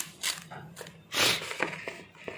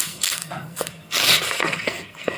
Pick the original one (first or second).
first